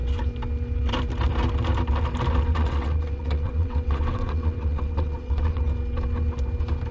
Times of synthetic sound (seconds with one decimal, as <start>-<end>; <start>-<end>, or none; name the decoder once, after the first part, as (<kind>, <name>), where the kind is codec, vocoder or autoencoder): 2.5-5.6 (vocoder, WaveNeXt)